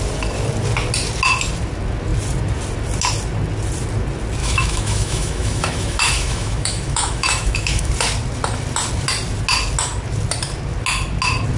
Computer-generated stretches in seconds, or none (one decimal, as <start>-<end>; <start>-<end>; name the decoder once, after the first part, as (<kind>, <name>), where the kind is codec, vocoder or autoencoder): 4.4-7.9 (autoencoder, DAC-VAE)